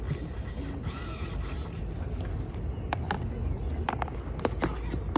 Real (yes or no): yes